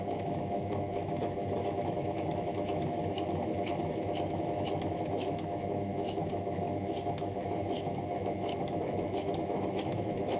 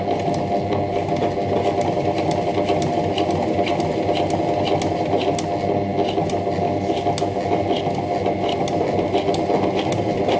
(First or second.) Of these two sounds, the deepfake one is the first